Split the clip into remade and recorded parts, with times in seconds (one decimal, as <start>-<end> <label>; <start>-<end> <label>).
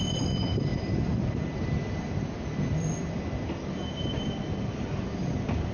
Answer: 0.0-5.7 recorded